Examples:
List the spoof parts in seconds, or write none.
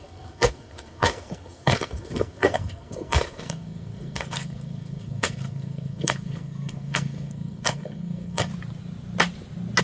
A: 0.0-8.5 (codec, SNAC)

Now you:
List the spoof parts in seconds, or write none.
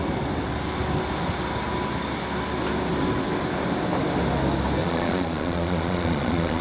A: 4.8-6.6 (vocoder, Vocos)